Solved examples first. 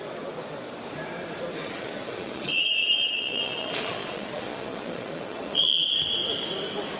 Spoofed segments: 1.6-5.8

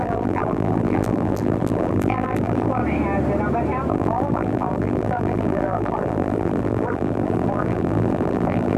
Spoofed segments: 0.0-2.8; 3.9-8.8

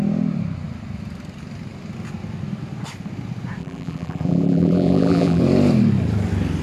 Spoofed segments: 3.6-5.4